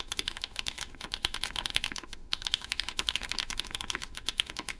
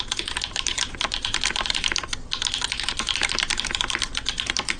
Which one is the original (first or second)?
second